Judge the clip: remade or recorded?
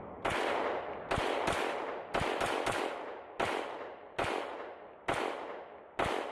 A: recorded